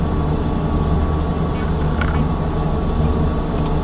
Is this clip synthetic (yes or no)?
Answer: no